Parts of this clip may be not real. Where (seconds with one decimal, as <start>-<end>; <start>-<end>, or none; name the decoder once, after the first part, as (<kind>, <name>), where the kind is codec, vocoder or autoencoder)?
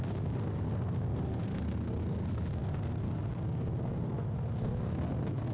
0.0-5.5 (codec, SNAC)